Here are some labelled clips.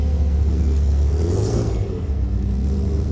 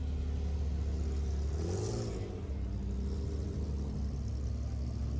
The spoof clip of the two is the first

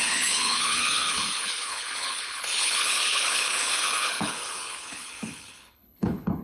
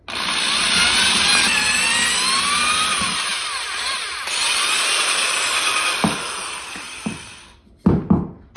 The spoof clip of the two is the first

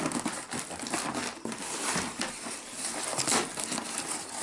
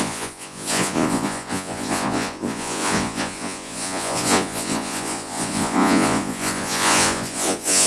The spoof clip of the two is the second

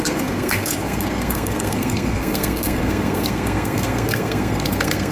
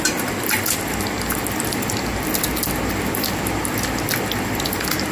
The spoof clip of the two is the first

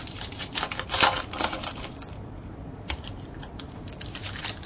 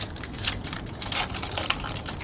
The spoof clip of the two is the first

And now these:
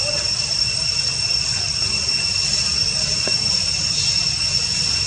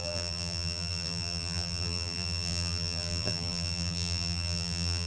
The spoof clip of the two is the second